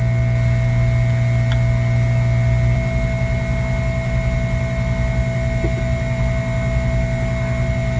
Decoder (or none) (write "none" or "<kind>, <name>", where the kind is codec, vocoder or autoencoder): none